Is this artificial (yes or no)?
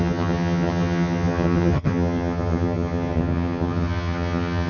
yes